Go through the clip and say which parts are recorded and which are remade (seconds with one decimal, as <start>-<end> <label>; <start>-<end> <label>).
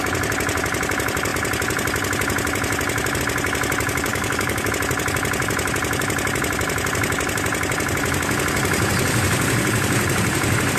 0.0-4.1 recorded; 4.1-4.7 remade; 4.7-10.8 recorded